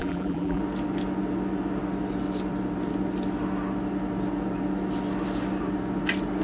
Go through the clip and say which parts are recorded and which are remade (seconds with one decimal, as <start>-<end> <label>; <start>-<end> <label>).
0.0-0.6 remade; 0.6-6.4 recorded